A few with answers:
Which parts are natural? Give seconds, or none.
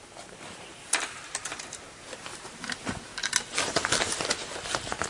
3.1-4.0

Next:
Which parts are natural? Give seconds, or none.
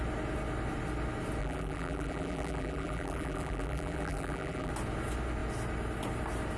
0.0-1.4; 4.7-6.6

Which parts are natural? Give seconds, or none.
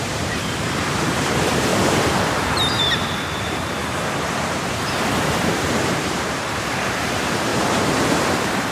1.7-2.2; 3.8-5.4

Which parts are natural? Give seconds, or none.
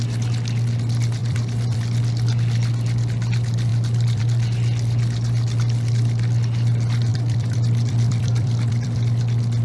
0.0-1.2; 1.8-3.7; 4.2-7.1; 9.2-9.6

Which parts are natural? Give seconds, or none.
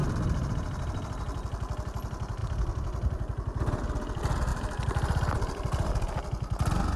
0.5-2.4; 3.6-4.5; 5.9-7.0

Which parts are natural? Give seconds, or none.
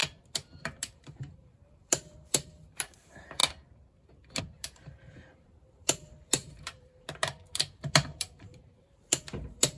3.4-4.4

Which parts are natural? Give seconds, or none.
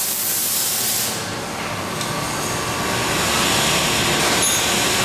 0.0-5.0